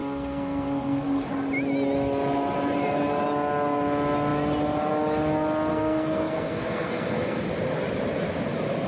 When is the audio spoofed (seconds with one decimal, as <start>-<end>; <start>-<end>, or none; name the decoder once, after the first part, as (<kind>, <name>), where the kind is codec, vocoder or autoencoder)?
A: 0.0-1.3 (codec, SNAC); 5.7-7.4